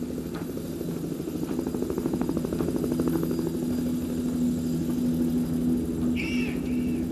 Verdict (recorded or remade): recorded